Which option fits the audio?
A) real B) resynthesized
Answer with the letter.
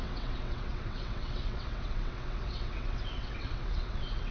B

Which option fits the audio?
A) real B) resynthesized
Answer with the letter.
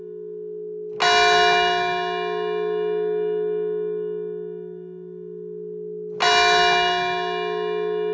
A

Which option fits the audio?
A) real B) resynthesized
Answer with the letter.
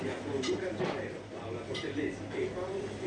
A